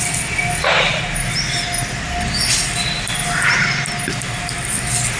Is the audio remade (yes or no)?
no